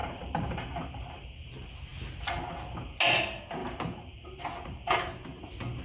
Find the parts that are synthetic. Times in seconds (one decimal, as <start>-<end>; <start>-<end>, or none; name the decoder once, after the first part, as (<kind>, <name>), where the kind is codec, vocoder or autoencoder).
0.0-1.5 (vocoder, BigVGAN v2); 3.6-5.1